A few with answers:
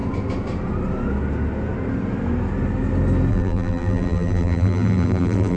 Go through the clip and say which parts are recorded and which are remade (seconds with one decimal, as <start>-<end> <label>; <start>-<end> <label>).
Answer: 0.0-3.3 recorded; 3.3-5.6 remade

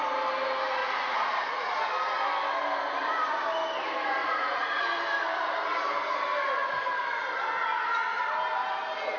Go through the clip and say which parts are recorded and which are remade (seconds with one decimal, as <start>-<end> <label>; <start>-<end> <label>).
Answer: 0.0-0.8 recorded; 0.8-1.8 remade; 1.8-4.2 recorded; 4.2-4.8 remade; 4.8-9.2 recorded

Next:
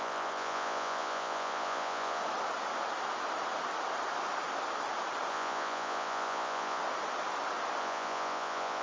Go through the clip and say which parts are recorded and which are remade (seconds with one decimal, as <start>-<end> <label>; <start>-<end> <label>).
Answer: 0.0-2.2 remade; 2.2-5.3 recorded; 5.3-6.8 remade; 6.8-7.8 recorded; 7.8-8.8 remade

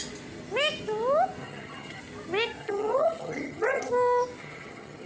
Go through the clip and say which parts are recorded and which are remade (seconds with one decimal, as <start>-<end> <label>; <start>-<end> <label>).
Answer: 0.0-1.4 recorded; 1.4-2.0 remade; 2.0-2.6 recorded; 2.6-3.9 remade; 3.9-4.4 recorded; 4.4-5.1 remade

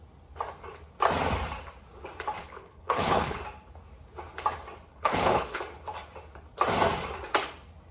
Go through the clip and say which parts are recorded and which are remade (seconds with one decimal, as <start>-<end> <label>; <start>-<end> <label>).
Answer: 0.0-2.4 recorded; 2.4-3.4 remade; 3.4-4.9 recorded; 4.9-5.6 remade; 5.6-7.9 recorded

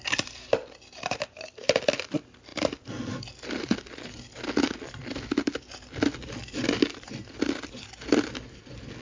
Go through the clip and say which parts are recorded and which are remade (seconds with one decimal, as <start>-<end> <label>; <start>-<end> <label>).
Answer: 0.0-9.0 recorded